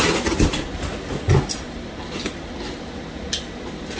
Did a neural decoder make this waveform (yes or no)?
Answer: no